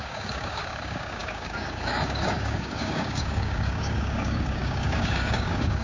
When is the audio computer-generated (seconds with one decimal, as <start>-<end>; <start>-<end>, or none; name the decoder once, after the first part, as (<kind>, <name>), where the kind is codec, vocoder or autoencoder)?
0.0-5.8 (codec, DAC)

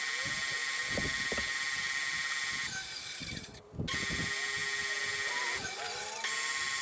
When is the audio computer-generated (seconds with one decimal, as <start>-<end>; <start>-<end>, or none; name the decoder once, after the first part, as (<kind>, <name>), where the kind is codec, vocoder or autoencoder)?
none

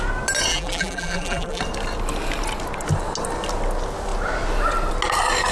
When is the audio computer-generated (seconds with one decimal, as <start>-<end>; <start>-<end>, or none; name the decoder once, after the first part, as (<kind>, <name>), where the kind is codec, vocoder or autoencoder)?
0.5-1.6 (vocoder, BigVGAN v2)

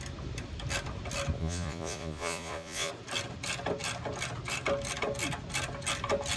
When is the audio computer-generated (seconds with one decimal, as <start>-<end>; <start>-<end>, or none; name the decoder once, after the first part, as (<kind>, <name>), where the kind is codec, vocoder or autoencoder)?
1.4-2.9 (vocoder, Vocos)

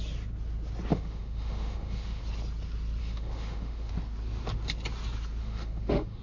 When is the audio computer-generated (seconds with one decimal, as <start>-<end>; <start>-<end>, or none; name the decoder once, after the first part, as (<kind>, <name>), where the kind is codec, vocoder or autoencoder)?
0.9-2.2 (autoencoder, DAC-VAE); 3.0-3.9; 5.4-6.2